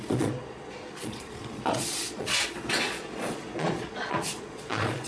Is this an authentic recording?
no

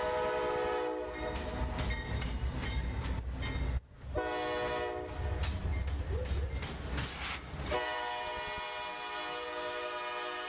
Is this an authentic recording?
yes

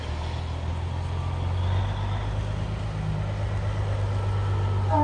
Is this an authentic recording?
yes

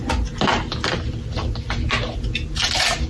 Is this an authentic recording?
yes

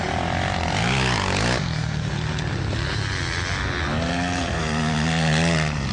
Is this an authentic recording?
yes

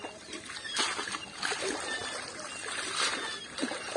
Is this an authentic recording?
yes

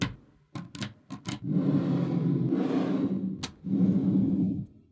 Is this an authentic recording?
yes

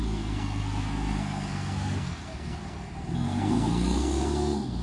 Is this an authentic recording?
no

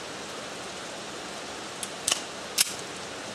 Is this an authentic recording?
yes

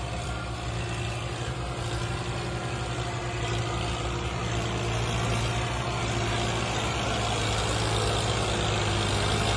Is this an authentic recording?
yes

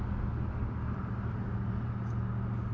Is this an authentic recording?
yes